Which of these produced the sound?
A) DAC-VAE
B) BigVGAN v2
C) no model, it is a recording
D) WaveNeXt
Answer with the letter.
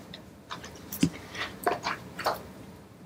B